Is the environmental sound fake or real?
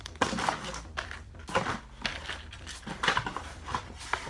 real